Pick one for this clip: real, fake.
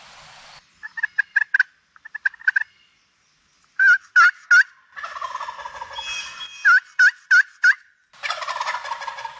real